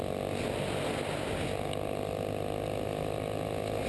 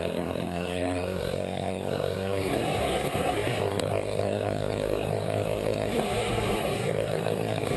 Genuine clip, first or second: first